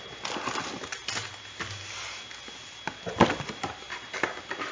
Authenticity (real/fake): real